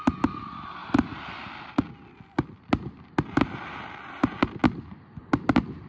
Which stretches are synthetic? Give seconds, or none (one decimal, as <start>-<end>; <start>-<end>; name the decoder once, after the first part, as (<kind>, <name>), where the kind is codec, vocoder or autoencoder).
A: none